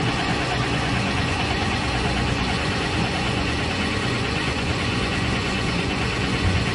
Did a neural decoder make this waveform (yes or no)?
yes